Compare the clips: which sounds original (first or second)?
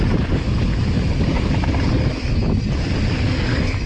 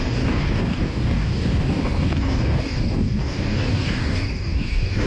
first